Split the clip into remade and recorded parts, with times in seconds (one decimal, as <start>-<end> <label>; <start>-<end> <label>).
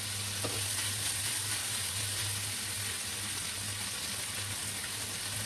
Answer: 0.0-5.5 recorded